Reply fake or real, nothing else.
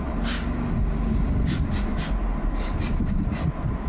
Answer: real